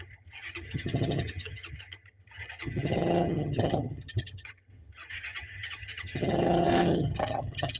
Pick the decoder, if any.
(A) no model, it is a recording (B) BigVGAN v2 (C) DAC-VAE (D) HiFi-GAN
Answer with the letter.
D